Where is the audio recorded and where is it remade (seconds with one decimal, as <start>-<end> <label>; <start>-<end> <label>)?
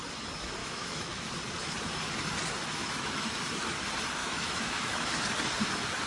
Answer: 0.0-0.6 recorded; 0.6-1.3 remade; 1.3-2.8 recorded; 2.8-3.4 remade; 3.4-4.2 recorded; 4.2-5.1 remade; 5.1-6.1 recorded